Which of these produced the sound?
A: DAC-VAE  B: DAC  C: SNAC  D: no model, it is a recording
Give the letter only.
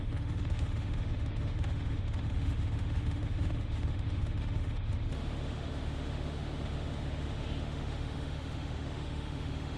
A